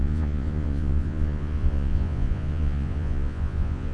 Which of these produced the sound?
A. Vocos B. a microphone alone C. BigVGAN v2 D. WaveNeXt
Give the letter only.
A